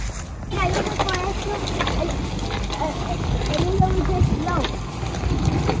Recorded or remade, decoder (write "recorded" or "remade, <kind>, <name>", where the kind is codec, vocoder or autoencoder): recorded